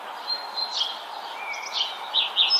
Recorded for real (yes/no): yes